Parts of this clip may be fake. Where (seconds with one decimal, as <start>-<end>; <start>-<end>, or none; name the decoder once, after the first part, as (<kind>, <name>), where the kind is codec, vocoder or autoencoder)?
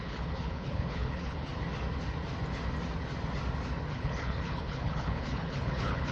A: 0.0-1.5 (codec, HILCodec); 3.9-6.1